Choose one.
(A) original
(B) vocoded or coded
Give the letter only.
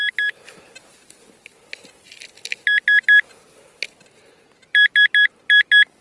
A